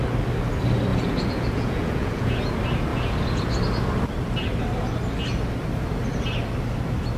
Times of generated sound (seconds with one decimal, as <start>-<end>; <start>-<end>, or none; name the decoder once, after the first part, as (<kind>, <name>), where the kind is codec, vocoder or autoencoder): 0.9-2.5 (vocoder, Vocos); 2.9-3.4